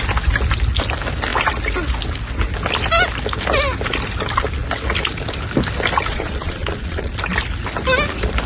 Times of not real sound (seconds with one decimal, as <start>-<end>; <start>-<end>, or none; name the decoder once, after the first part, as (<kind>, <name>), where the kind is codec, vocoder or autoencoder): 6.1-7.1 (vocoder, Vocos)